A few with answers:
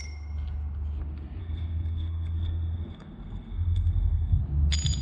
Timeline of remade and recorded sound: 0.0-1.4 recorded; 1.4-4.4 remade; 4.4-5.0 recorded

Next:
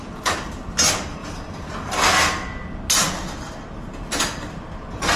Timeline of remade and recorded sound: 0.0-5.2 recorded

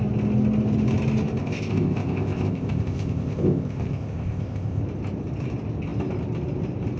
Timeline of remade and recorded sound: 0.0-1.4 recorded; 1.4-4.8 remade; 4.8-7.0 recorded

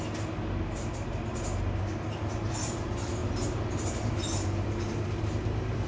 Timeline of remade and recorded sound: 0.0-5.9 recorded